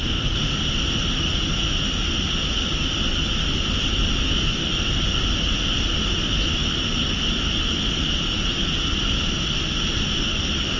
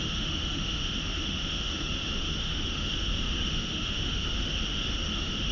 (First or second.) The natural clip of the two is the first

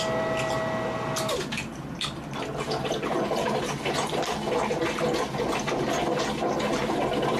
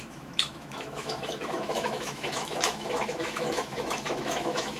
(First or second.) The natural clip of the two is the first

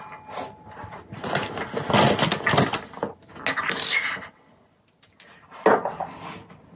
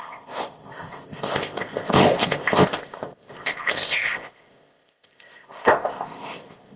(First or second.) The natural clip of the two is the first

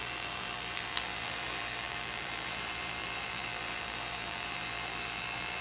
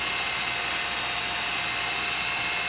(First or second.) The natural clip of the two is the second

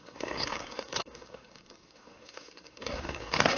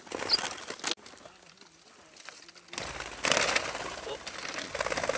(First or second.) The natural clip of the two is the second